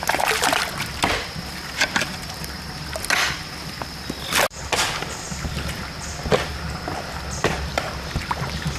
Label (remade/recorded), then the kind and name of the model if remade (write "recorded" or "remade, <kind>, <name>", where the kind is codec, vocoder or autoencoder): recorded